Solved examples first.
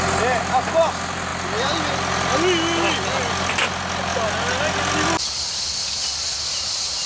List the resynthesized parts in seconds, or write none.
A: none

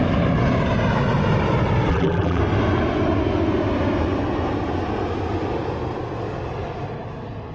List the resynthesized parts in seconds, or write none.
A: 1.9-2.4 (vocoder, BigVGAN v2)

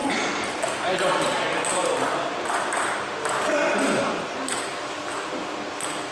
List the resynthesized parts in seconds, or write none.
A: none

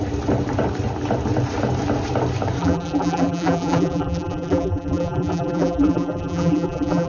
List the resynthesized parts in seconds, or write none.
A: 2.6-7.1 (vocoder, BigVGAN v2)

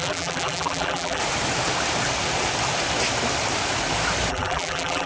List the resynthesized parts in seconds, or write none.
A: 0.0-1.2 (vocoder, BigVGAN v2); 4.3-5.1